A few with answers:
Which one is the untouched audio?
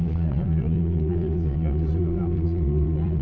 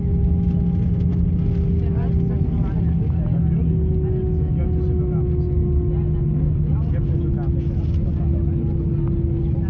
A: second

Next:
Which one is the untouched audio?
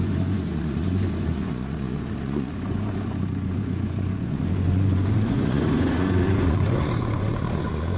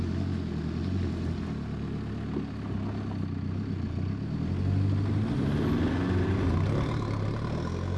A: second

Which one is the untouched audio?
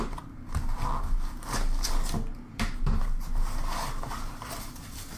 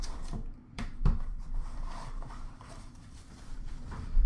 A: first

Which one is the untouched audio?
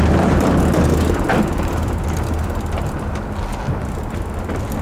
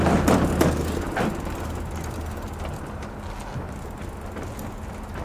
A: second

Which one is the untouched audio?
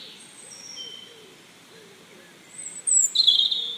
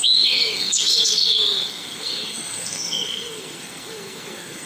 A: first